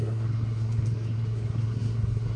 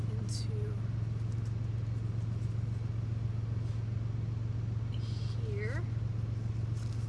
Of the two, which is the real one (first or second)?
second